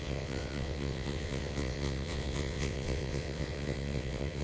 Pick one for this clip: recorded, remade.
remade